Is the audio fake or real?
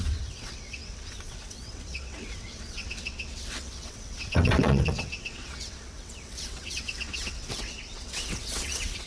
fake